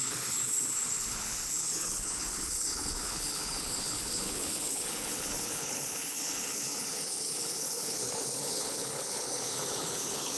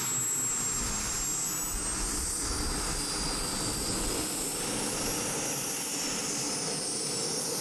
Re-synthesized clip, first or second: first